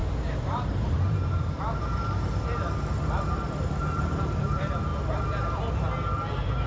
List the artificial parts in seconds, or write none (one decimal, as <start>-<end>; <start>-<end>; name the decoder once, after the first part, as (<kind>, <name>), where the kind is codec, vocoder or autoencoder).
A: 0.0-4.9 (vocoder, BigVGAN v2); 6.3-6.7